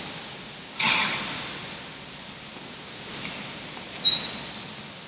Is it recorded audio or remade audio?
recorded